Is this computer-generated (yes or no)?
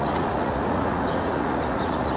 yes